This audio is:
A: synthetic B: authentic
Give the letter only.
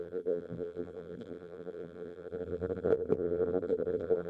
A